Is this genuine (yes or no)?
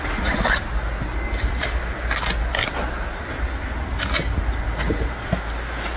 yes